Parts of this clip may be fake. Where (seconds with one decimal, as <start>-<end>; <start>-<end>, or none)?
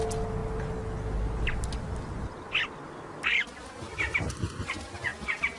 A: none